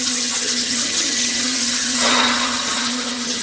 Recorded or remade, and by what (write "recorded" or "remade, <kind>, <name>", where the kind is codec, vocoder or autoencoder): remade, vocoder, HiFi-GAN